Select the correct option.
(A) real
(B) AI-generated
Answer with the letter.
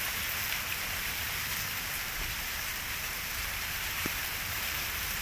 B